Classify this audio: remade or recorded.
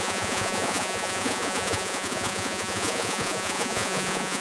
remade